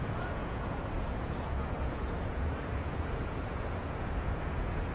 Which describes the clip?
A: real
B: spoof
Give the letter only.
B